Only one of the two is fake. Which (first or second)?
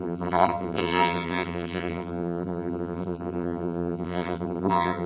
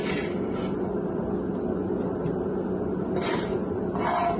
first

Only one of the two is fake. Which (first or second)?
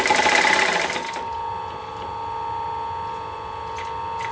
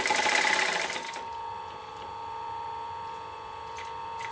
second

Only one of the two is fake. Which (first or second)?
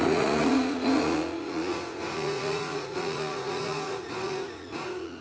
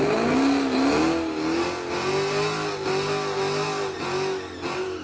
first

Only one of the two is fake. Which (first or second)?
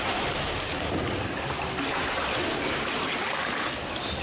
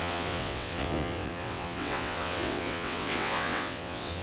second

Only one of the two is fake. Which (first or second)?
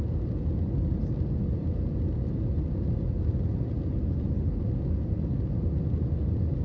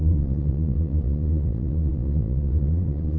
second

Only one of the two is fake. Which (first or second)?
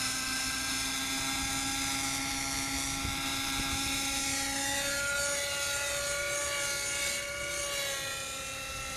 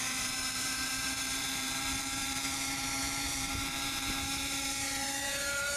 second